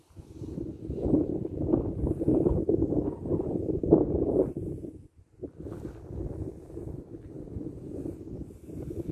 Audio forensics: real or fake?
real